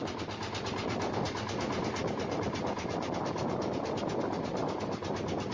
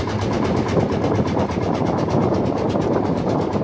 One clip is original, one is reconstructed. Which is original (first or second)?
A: first